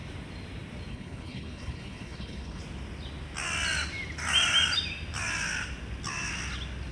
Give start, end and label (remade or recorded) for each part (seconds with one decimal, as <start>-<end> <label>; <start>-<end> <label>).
0.0-0.9 recorded; 0.9-2.6 remade; 2.6-6.9 recorded